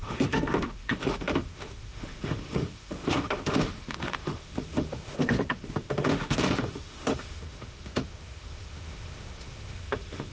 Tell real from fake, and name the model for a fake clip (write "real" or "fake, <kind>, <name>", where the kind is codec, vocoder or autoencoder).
fake, autoencoder, DAC-VAE